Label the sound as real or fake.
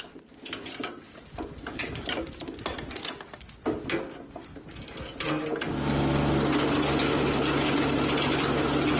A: real